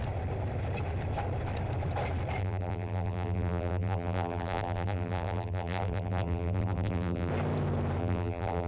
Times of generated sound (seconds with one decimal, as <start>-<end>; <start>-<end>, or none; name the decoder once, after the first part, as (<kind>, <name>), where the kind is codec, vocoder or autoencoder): 2.4-7.3 (vocoder, BigVGAN v2); 8.0-8.7